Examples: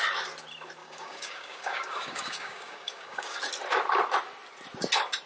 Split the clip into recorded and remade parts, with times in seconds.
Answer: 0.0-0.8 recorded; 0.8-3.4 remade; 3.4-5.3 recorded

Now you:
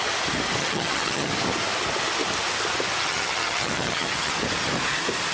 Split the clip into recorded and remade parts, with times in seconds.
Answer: 0.0-0.6 recorded; 0.6-1.3 remade; 1.3-3.0 recorded; 3.0-4.3 remade; 4.3-5.3 recorded